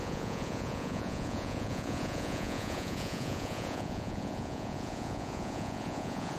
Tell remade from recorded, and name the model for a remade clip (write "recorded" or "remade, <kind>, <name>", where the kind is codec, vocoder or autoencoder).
remade, vocoder, Vocos